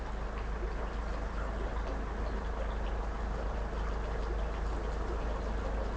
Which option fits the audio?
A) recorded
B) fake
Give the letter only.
A